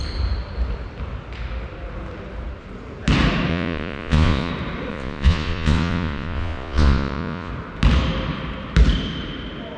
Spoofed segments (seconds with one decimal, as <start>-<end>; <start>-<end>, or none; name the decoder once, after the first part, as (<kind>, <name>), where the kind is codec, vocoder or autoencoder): 3.5-4.5 (vocoder, Vocos); 4.9-7.5